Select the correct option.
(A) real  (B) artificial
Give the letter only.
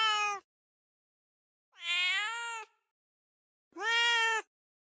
A